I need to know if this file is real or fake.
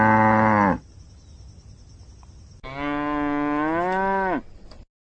real